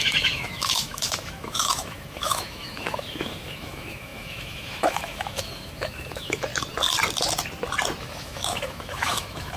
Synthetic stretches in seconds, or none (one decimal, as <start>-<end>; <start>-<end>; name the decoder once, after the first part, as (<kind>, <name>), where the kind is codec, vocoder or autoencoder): 0.0-6.5 (autoencoder, DAC-VAE); 8.0-9.6